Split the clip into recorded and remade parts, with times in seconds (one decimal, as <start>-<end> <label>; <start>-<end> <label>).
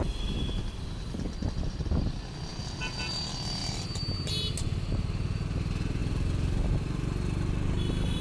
0.0-8.2 recorded